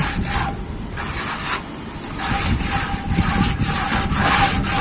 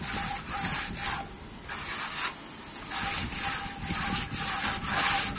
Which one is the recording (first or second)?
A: second